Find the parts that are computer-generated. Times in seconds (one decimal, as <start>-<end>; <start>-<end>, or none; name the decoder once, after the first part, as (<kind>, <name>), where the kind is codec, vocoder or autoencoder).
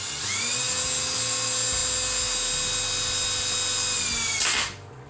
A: none